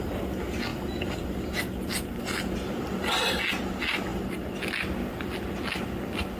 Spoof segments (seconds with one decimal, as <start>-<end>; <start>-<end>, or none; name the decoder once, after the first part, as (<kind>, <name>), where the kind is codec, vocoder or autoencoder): none